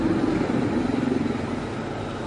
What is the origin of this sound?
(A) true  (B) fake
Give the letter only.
A